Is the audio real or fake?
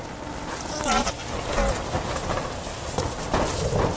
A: real